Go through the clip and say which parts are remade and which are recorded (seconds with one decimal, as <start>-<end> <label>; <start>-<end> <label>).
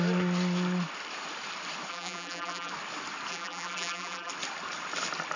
0.0-1.9 recorded; 1.9-2.7 remade; 2.7-3.3 recorded; 3.3-4.3 remade; 4.3-5.4 recorded